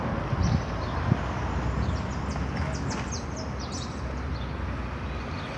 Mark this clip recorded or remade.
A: recorded